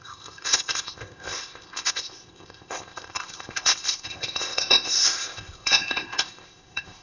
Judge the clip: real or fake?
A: fake